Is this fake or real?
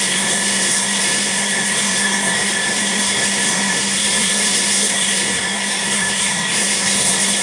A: fake